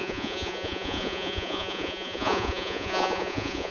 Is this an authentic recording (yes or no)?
no